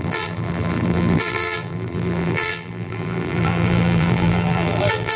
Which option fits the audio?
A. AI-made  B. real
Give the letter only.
A